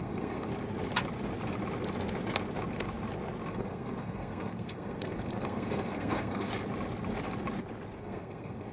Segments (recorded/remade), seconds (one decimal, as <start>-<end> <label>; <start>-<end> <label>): 0.0-0.5 remade; 0.5-3.5 recorded; 3.5-6.5 remade; 6.5-8.0 recorded; 8.0-8.7 remade